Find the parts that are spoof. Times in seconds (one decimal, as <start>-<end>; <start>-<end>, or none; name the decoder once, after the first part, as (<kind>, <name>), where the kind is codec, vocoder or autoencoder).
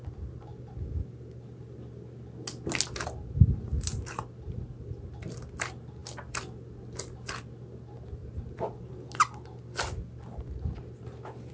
none